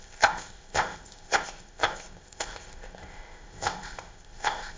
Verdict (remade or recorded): remade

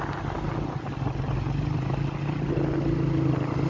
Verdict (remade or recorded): recorded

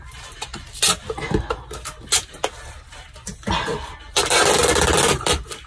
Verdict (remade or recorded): recorded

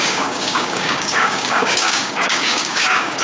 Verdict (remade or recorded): remade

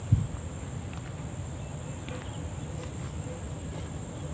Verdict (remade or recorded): recorded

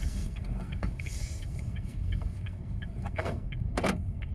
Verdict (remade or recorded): remade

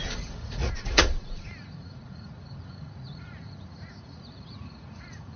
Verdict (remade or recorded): remade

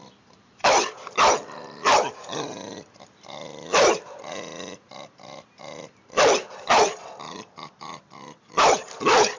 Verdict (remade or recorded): remade